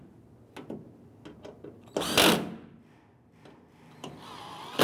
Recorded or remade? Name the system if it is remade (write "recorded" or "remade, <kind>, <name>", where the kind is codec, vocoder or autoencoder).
recorded